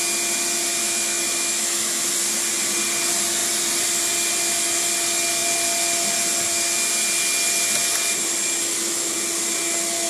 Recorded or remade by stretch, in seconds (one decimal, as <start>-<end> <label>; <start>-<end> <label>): 0.0-0.8 recorded; 0.8-2.0 remade; 2.0-10.1 recorded